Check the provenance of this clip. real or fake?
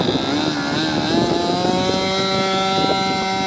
real